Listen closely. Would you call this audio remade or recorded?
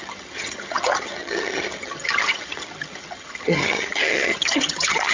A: remade